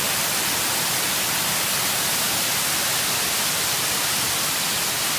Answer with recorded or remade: recorded